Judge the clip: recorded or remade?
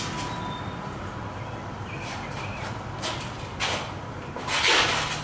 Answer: recorded